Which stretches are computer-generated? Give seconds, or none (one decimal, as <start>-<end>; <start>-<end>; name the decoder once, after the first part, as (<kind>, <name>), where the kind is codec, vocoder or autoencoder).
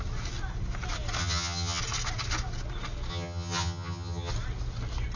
1.2-1.8 (vocoder, HiFi-GAN); 3.1-4.3